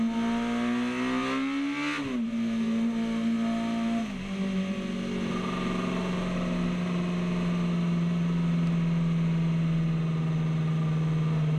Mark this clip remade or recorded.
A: recorded